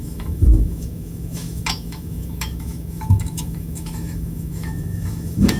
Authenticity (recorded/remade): remade